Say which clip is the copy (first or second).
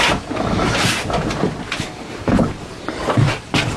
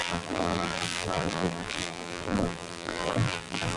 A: second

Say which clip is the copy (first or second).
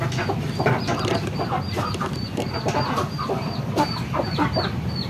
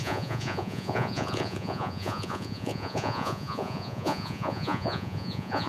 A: second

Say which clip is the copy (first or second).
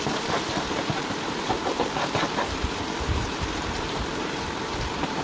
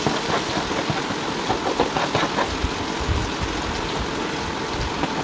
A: first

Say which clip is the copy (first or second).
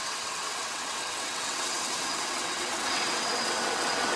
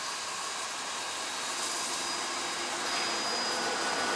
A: first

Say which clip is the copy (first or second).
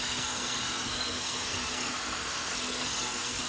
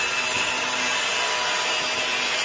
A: first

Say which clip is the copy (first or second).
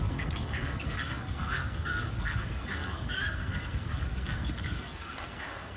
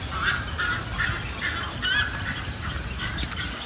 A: first